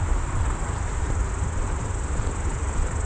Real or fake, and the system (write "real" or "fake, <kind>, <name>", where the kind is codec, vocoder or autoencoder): real